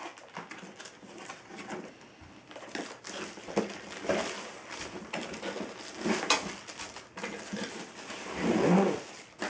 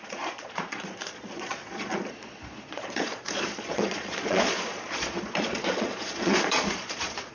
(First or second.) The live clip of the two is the first